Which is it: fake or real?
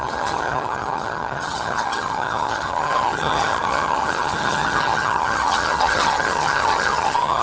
fake